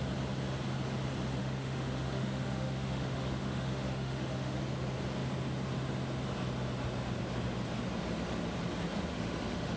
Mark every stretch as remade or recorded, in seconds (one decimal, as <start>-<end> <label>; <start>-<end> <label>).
0.0-1.4 recorded; 1.4-4.6 remade; 4.6-9.1 recorded; 9.1-9.8 remade